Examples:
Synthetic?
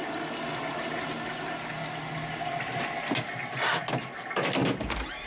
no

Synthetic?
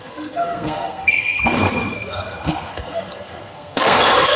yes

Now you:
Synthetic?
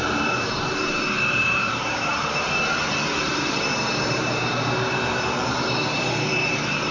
yes